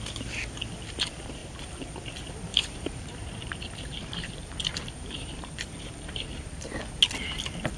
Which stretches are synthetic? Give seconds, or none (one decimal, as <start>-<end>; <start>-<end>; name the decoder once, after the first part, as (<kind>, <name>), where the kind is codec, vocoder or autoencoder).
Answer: 1.4-1.9 (vocoder, BigVGAN v2); 2.5-7.0

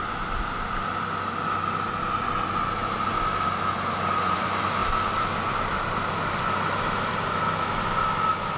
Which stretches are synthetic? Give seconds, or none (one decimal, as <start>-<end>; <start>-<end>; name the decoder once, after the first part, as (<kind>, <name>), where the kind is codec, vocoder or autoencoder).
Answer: 4.8-7.4 (vocoder, BigVGAN v2)

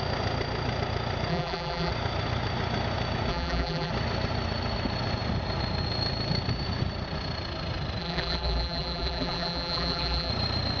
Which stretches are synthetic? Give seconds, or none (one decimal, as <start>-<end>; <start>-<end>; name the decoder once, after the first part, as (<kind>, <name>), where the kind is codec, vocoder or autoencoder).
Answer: 1.3-1.9 (vocoder, BigVGAN v2); 3.3-3.9; 8.0-10.3

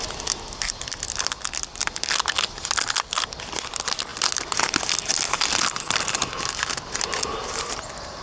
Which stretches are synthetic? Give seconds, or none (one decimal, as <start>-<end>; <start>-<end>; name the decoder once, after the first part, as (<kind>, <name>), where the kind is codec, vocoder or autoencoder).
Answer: 7.3-8.2 (vocoder, BigVGAN v2)

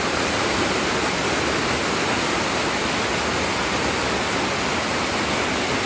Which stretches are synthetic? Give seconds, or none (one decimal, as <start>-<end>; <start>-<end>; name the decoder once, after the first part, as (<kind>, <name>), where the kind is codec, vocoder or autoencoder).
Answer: 0.0-1.2 (vocoder, BigVGAN v2); 4.7-5.9

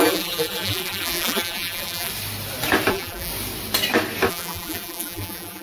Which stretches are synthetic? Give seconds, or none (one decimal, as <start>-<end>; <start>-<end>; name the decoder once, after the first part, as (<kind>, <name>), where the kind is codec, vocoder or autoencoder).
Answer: 0.0-2.1 (vocoder, BigVGAN v2); 2.9-3.3; 4.3-5.6